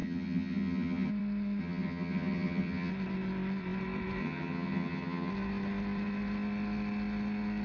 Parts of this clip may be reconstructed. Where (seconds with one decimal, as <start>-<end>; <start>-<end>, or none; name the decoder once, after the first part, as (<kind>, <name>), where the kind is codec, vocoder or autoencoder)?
0.0-1.1 (vocoder, HiFi-GAN); 1.6-2.9; 4.2-5.3